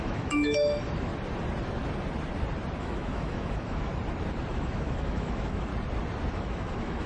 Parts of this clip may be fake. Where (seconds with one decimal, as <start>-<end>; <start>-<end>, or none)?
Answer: 0.0-1.1; 2.8-3.9; 4.5-5.7; 6.3-7.1